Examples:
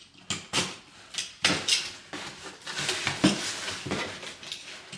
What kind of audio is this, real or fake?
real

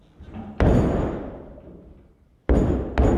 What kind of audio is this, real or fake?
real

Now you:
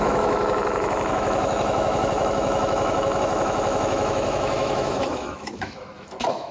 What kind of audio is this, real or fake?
fake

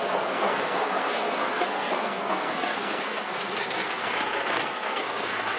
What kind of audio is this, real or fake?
fake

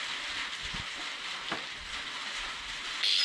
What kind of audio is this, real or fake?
real